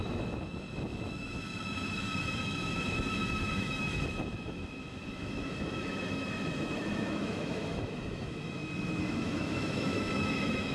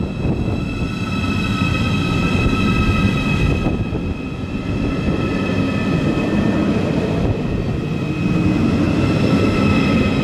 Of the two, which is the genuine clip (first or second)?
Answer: second